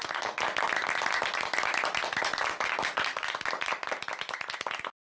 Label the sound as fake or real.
real